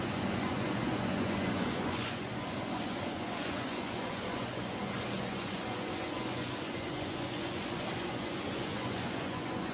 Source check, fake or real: fake